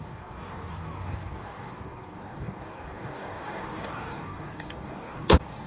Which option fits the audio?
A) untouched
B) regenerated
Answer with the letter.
B